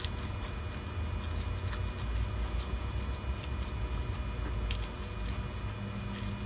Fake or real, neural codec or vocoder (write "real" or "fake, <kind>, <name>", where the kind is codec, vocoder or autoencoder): real